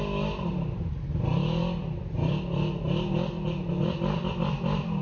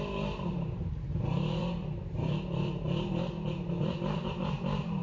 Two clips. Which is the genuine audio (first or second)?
first